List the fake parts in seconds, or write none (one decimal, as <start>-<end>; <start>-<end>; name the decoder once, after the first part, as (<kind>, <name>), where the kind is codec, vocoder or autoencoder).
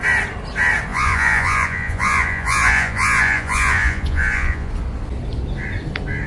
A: 0.9-4.7 (vocoder, Vocos)